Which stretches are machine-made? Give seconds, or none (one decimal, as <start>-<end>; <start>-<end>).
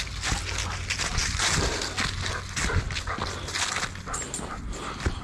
none